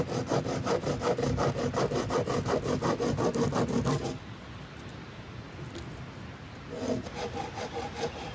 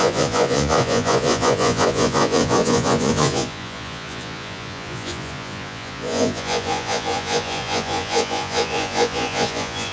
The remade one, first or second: second